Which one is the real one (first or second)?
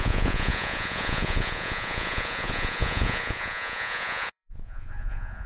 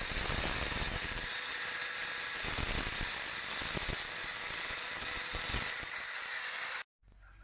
second